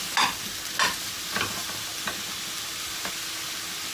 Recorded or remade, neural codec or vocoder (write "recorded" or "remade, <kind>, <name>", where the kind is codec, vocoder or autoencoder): recorded